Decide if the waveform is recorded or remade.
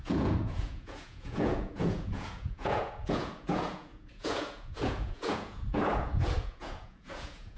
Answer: remade